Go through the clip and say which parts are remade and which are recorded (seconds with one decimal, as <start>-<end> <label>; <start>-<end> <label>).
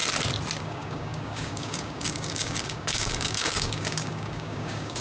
0.0-0.6 recorded; 0.6-5.0 remade